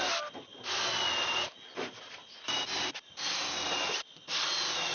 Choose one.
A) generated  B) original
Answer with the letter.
B